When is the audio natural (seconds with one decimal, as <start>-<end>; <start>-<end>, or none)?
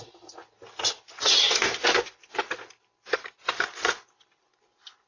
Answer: 0.0-5.1